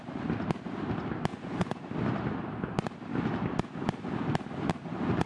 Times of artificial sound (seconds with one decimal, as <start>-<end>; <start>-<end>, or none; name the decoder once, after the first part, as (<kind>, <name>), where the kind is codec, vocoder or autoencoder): 1.3-1.8 (vocoder, Vocos)